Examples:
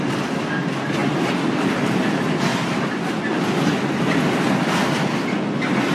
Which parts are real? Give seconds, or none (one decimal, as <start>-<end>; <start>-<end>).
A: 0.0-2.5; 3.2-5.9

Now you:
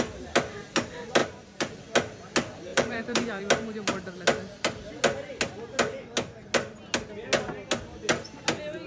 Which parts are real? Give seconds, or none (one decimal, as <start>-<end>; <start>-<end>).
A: 0.0-1.2; 1.7-2.7; 3.4-8.9

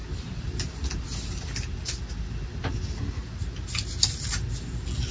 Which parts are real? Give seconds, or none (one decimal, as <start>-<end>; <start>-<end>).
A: 0.0-5.1

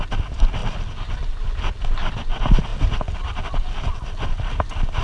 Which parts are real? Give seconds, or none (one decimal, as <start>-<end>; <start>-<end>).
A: 0.0-5.0

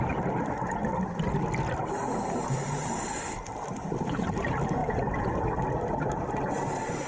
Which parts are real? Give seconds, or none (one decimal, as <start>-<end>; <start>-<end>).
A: 0.0-0.8; 4.3-7.1